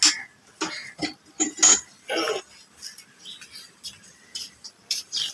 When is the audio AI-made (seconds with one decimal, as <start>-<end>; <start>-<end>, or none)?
none